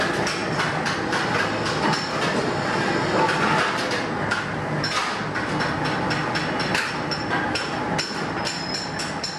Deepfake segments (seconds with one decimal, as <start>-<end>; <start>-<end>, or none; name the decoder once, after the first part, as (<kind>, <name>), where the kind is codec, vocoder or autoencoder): none